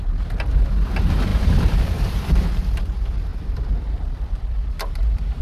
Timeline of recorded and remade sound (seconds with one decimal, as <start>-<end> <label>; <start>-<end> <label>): 0.0-1.3 recorded; 1.3-2.6 remade; 2.6-3.3 recorded; 3.3-5.4 remade